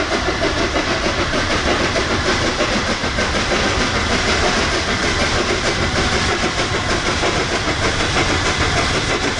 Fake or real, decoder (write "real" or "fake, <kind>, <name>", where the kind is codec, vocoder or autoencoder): real